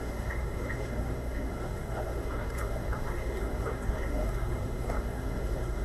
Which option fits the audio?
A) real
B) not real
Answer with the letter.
B